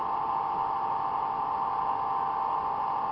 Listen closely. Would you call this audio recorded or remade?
recorded